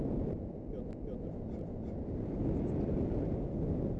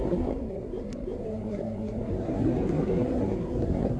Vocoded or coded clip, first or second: second